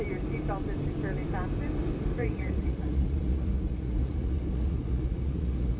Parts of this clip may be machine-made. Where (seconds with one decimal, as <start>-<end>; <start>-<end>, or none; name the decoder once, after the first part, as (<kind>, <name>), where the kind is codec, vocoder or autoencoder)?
2.2-5.8 (vocoder, Vocos)